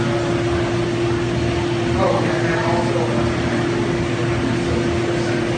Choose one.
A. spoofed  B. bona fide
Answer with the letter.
B